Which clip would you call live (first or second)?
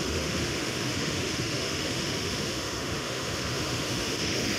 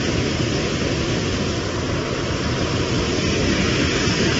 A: second